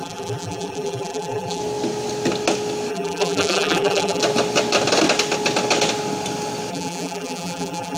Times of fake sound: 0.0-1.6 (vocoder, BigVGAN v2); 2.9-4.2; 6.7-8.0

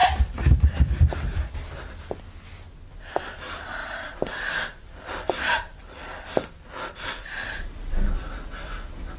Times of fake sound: 0.0-1.5 (vocoder, BigVGAN v2); 3.8-8.1

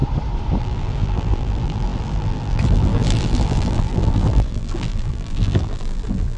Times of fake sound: 0.6-6.4 (vocoder, BigVGAN v2)

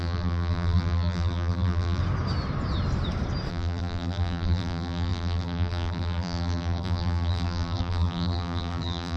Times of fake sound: 0.0-2.0 (vocoder, BigVGAN v2); 3.5-9.2

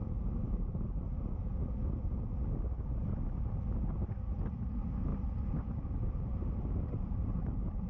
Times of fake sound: 0.0-0.7 (vocoder, BigVGAN v2); 5.1-7.4

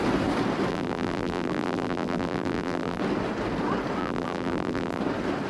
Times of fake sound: 0.7-3.0 (vocoder, BigVGAN v2); 4.0-5.0